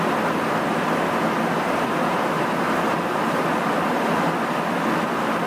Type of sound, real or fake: real